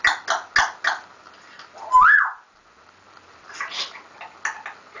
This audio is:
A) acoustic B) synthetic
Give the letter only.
A